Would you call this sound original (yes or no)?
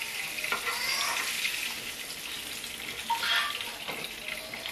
yes